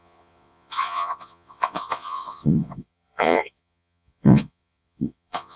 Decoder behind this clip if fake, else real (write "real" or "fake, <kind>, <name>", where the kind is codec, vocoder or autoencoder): fake, vocoder, Vocos